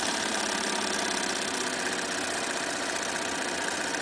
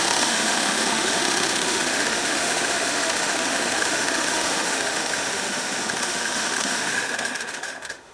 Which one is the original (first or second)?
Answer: first